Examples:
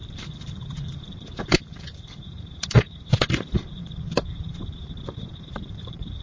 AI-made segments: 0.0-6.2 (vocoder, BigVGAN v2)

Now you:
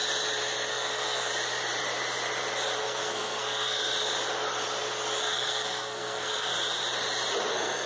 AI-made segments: 0.7-1.3 (codec, SNAC); 2.8-3.8; 5.2-6.5; 7.5-7.9

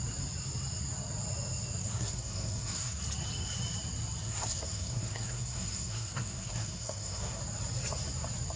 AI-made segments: 1.8-3.0 (codec, SNAC); 4.2-7.4

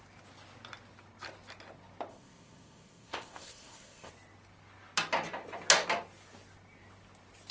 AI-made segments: 2.1-4.1 (codec, ZipCodec)

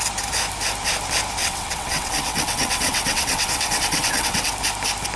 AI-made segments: 1.4-4.5 (vocoder, WaveNeXt)